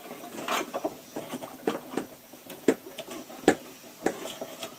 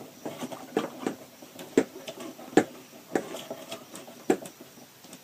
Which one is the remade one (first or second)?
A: first